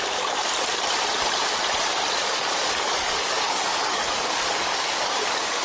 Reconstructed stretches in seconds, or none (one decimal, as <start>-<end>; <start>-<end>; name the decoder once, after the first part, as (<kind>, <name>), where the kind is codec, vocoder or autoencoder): 2.2-5.6 (codec, DAC)